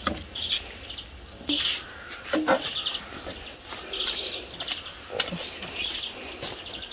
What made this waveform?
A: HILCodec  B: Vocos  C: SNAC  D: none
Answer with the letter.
D